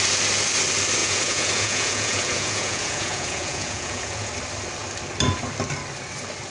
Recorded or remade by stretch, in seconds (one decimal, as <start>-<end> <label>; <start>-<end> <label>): 0.0-1.0 recorded; 1.0-4.3 remade; 4.3-6.5 recorded